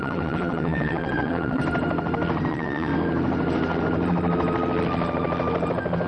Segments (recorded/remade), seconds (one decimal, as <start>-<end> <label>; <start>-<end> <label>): 0.0-1.6 remade; 1.6-2.5 recorded; 2.5-2.9 remade; 2.9-6.1 recorded